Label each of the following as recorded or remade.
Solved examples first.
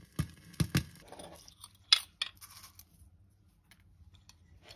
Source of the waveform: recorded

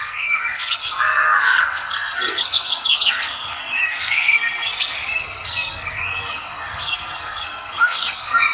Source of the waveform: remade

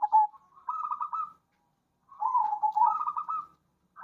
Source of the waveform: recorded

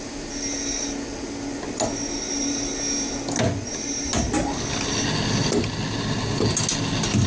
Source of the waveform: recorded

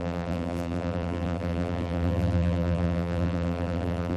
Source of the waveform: remade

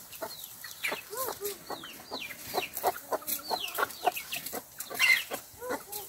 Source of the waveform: remade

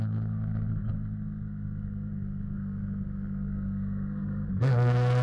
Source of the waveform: remade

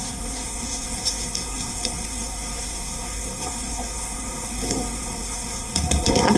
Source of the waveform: remade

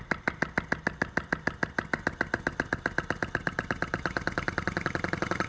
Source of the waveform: recorded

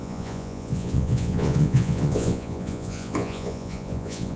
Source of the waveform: remade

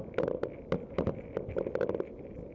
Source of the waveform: recorded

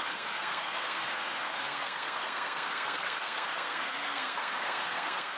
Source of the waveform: remade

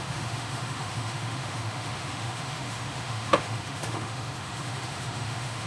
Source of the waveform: remade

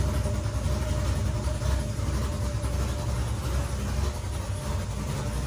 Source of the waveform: recorded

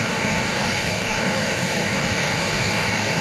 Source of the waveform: remade